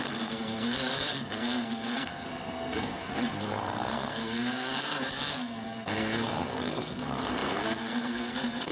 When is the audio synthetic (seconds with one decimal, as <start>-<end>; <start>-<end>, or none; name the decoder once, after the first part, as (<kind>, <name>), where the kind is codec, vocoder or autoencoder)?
0.0-8.7 (codec, SNAC)